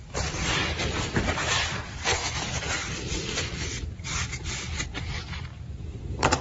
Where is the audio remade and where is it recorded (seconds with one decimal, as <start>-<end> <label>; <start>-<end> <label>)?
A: 0.0-2.2 remade; 2.2-4.0 recorded; 4.0-6.4 remade